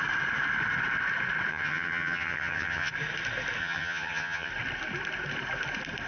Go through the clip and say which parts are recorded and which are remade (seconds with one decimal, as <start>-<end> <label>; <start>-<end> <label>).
0.0-1.5 recorded; 1.5-2.9 remade; 2.9-3.6 recorded; 3.6-4.5 remade; 4.5-6.1 recorded

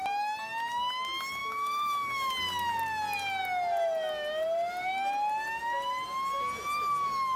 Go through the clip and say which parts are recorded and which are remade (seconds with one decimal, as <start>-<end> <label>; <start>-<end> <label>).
0.0-1.4 recorded; 1.4-2.3 remade; 2.3-7.4 recorded

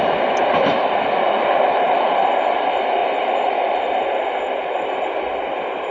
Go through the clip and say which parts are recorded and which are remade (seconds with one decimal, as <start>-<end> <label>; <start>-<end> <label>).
0.0-5.9 recorded